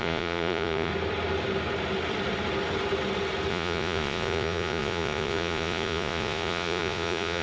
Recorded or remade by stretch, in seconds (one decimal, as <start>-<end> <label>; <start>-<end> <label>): 0.0-0.9 remade; 0.9-3.5 recorded; 3.5-7.4 remade